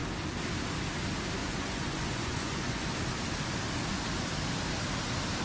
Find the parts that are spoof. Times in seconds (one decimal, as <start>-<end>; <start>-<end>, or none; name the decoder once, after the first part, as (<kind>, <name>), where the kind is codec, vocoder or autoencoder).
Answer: 1.4-2.9 (vocoder, Vocos)